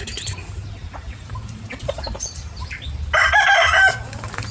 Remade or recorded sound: recorded